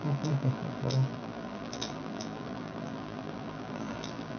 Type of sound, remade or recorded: remade